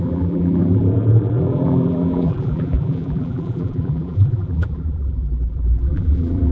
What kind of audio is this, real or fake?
fake